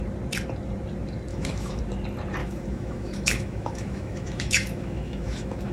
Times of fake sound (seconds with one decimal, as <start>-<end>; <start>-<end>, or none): 1.3-1.8; 2.4-5.7